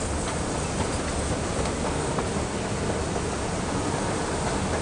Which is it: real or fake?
real